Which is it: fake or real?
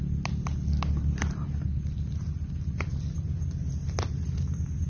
real